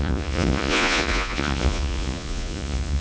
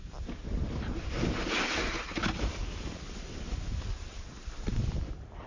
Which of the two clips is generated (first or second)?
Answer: first